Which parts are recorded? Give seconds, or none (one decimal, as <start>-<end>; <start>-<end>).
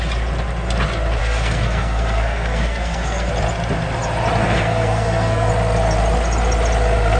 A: 0.0-1.2; 3.3-4.4; 5.5-7.2